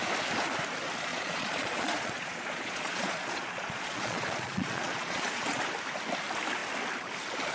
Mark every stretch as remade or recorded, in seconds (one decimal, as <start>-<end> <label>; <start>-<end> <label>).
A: 0.0-1.1 recorded; 1.1-5.6 remade; 5.6-7.5 recorded